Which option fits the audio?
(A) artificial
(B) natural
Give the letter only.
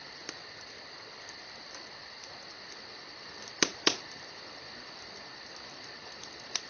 B